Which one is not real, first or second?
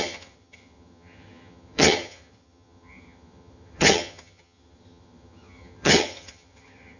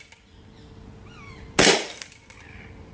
first